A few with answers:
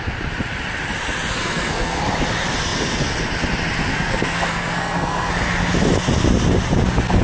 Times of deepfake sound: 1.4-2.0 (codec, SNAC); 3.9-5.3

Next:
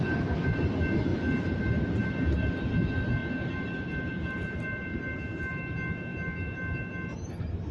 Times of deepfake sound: none